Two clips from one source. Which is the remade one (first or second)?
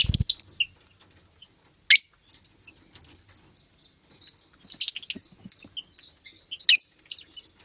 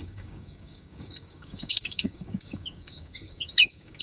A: second